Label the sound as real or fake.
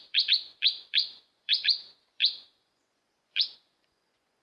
fake